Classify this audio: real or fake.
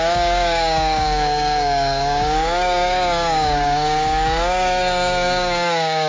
fake